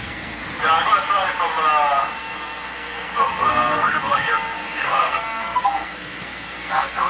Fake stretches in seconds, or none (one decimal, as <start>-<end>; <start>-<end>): 0.0-0.4; 2.2-7.1